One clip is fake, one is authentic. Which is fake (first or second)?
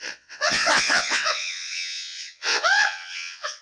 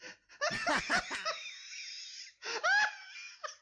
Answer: first